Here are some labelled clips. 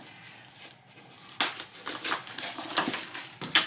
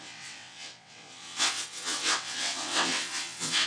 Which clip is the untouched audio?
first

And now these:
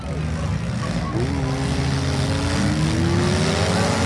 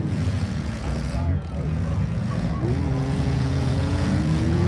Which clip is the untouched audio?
first